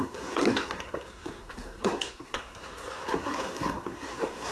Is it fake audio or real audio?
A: fake